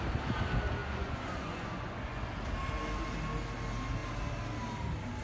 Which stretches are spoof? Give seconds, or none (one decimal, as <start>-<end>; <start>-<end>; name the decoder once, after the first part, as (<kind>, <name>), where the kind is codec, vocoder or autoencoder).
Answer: 0.8-2.2 (vocoder, Vocos)